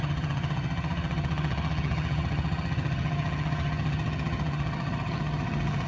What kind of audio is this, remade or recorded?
remade